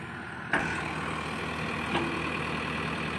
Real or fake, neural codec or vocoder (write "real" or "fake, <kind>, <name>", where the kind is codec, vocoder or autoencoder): real